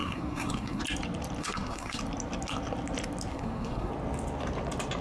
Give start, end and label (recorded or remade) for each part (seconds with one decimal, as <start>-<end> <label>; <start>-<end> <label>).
0.0-0.8 remade; 0.8-1.4 recorded; 1.4-2.0 remade; 2.0-3.3 recorded; 3.3-3.9 remade; 3.9-5.0 recorded